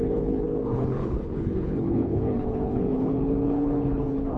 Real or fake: fake